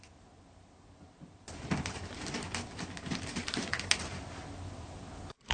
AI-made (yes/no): no